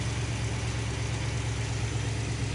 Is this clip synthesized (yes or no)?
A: no